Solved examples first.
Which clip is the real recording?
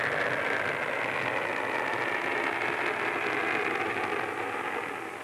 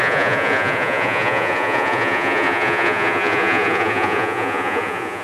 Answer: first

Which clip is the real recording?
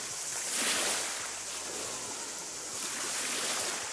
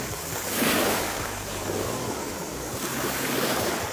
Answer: first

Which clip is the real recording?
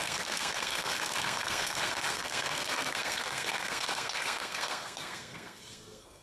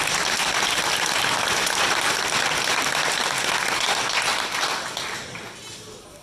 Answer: second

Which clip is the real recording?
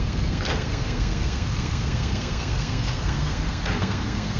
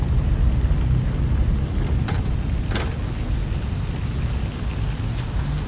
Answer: second